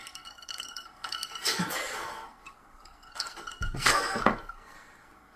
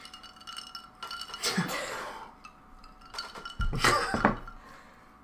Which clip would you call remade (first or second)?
first